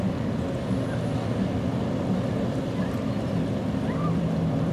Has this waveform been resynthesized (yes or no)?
no